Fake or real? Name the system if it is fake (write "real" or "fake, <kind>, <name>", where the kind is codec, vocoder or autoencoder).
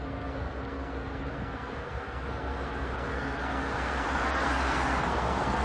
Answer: fake, codec, SNAC